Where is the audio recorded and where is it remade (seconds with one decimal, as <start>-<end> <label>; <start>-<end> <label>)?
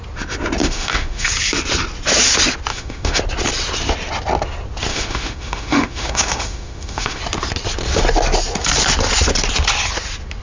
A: 0.0-0.6 recorded; 0.6-1.3 remade; 1.3-2.7 recorded; 2.7-3.2 remade; 3.2-4.9 recorded; 4.9-7.2 remade; 7.2-10.4 recorded